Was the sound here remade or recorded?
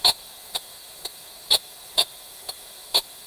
remade